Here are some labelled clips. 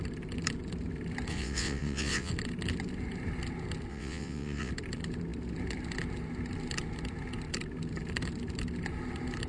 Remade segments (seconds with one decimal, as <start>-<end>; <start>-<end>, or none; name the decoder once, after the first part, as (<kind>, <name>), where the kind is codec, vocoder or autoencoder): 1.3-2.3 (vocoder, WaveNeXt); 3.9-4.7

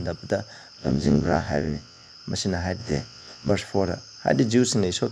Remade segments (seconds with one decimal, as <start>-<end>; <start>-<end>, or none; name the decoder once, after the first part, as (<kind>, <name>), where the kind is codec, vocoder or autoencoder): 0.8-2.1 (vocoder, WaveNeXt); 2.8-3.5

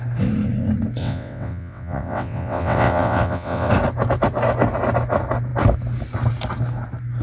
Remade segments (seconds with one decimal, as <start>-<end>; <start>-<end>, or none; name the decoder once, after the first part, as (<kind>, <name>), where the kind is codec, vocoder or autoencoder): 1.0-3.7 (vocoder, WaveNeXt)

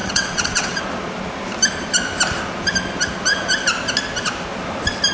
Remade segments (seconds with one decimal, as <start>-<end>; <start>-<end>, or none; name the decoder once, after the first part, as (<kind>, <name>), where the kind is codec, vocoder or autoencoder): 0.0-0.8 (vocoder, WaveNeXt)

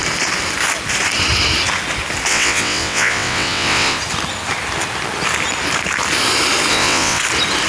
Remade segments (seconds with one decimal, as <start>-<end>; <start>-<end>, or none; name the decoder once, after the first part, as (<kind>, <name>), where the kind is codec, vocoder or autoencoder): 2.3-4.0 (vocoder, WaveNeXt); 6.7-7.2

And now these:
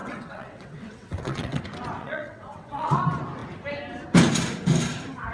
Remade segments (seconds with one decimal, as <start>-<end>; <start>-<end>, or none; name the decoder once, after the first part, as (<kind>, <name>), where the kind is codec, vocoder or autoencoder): 0.0-1.6 (vocoder, WaveNeXt); 2.0-3.0